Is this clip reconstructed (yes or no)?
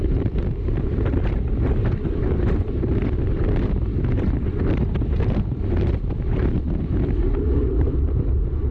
yes